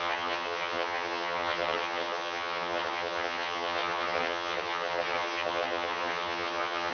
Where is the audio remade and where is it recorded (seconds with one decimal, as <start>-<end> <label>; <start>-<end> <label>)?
0.0-6.9 remade